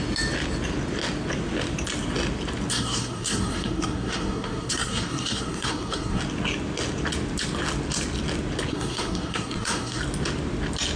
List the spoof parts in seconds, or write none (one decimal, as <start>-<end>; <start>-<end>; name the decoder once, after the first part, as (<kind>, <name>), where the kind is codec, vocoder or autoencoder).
2.7-6.2 (codec, SNAC); 8.7-10.0